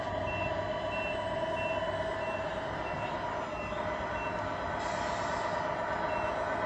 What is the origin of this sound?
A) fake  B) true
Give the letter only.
B